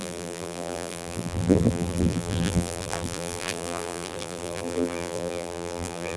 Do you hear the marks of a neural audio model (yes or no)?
yes